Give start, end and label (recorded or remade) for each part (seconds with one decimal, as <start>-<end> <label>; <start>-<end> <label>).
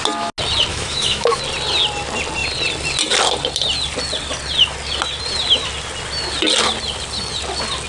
0.0-0.7 recorded; 0.7-1.4 remade; 1.4-7.9 recorded